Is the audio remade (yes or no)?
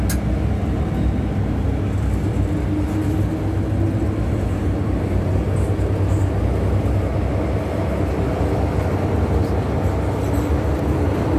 no